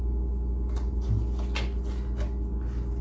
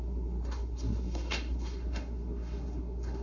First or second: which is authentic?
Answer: first